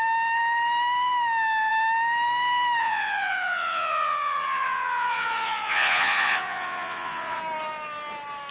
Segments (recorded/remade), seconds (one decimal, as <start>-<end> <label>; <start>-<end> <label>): 0.0-2.8 recorded; 2.8-7.4 remade; 7.4-8.5 recorded